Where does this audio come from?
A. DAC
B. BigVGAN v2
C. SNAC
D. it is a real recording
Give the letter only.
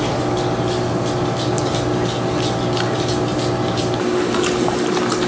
D